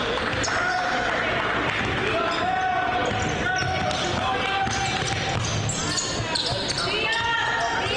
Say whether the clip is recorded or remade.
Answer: recorded